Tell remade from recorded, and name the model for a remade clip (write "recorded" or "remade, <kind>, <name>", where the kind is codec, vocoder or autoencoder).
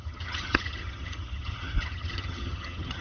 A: remade, vocoder, HiFi-GAN